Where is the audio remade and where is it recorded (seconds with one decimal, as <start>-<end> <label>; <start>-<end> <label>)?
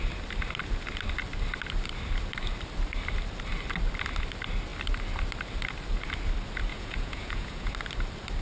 0.0-6.7 recorded; 6.7-7.7 remade; 7.7-8.4 recorded